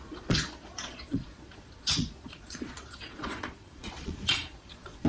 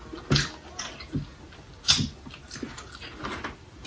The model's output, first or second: first